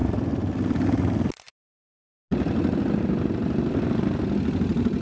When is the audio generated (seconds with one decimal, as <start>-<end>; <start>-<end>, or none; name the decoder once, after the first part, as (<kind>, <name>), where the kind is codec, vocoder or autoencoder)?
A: 0.0-1.0 (vocoder, BigVGAN v2)